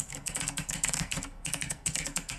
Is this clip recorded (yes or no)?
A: no